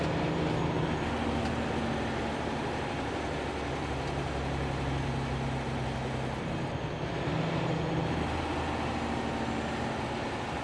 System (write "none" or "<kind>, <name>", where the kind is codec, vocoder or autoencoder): none